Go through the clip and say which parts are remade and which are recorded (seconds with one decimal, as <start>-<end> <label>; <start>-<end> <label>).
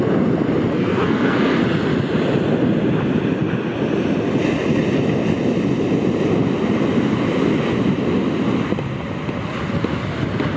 0.0-0.7 recorded; 0.7-1.6 remade; 1.6-10.6 recorded